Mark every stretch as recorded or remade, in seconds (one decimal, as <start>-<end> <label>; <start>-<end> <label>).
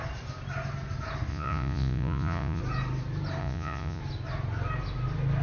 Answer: 0.0-1.3 recorded; 1.3-2.6 remade; 2.6-3.4 recorded; 3.4-4.0 remade; 4.0-5.4 recorded